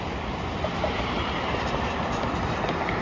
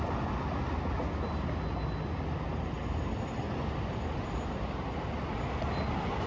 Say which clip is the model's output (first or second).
first